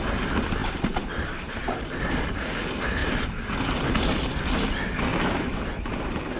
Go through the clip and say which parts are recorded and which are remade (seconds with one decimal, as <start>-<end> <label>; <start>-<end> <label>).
0.0-0.6 recorded; 0.6-2.3 remade; 2.3-5.1 recorded; 5.1-5.7 remade; 5.7-6.4 recorded